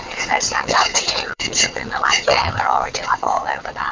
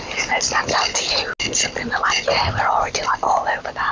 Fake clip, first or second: first